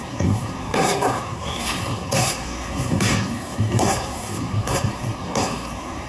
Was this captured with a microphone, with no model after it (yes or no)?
no